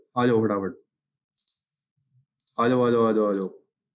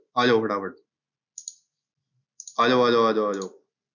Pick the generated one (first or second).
first